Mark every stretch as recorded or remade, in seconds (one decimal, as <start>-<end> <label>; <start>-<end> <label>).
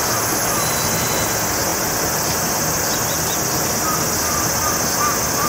0.0-5.5 recorded